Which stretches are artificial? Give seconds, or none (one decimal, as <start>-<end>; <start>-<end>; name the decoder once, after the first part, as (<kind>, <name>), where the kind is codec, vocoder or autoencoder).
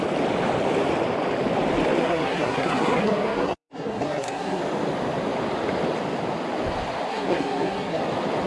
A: 2.0-4.6 (codec, SNAC); 7.1-8.0